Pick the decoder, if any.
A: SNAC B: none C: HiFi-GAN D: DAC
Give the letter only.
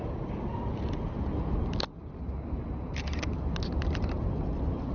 B